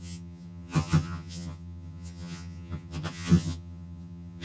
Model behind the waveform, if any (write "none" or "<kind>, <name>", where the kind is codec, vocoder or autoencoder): vocoder, HiFi-GAN